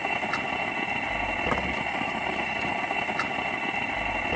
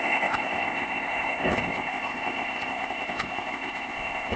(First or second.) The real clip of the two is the first